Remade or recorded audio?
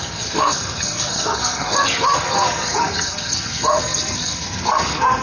remade